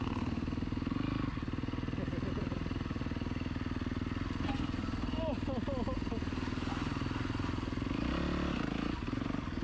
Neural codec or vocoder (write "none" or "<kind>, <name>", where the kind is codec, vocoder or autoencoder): none